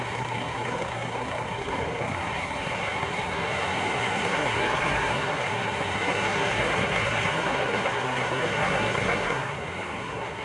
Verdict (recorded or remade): remade